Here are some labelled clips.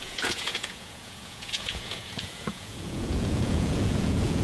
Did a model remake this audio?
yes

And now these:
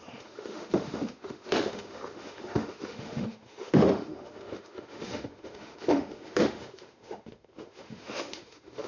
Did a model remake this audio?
yes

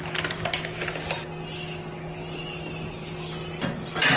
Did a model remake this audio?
no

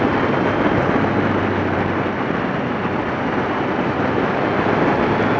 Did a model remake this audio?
no